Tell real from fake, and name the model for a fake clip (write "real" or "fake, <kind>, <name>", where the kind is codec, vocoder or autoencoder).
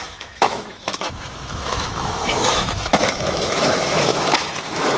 fake, autoencoder, DAC-VAE